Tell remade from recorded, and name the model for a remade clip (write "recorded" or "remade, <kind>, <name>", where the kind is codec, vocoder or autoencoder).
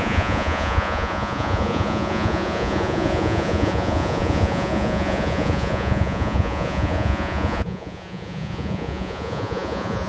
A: remade, vocoder, Vocos